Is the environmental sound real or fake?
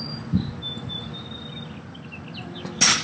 real